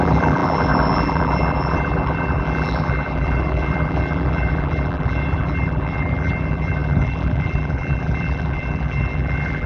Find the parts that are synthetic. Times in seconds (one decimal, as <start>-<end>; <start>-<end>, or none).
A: 0.0-9.7